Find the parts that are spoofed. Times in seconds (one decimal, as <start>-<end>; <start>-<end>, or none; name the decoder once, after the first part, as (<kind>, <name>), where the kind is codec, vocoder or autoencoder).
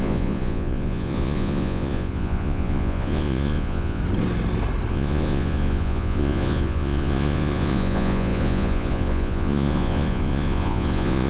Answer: 0.0-4.0 (vocoder, Vocos); 4.9-11.3